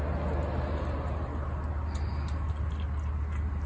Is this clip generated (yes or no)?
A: no